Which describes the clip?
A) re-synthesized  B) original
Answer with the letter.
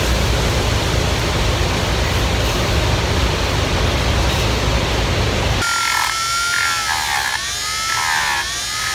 B